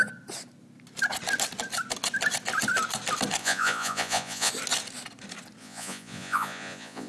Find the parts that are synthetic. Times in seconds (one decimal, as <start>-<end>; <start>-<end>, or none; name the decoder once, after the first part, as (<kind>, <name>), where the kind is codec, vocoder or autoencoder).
3.4-4.5 (vocoder, Vocos); 5.6-7.1